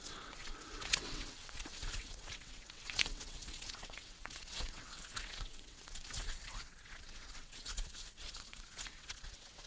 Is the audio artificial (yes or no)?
yes